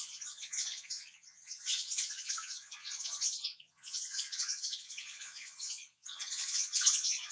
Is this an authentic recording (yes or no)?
no